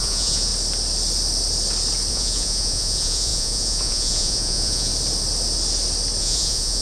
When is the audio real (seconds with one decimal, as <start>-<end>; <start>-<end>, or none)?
0.5-2.1; 4.9-6.2